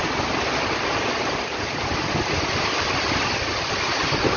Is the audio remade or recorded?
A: recorded